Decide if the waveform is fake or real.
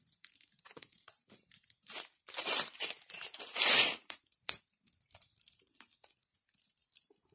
fake